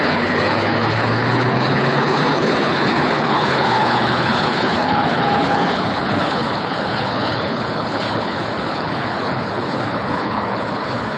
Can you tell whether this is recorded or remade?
remade